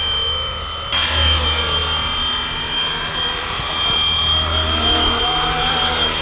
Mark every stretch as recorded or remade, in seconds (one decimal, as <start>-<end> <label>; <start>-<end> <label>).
0.0-6.2 recorded